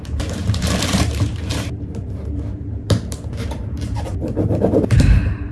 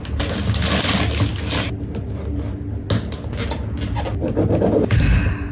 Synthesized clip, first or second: first